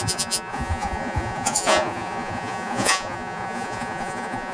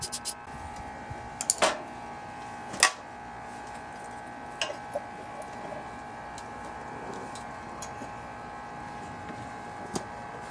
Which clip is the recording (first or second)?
second